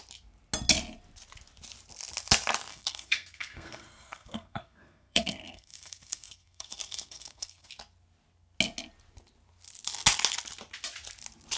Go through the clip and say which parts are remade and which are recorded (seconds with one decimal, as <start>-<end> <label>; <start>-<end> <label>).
0.0-2.7 recorded; 2.7-7.7 remade; 7.7-11.6 recorded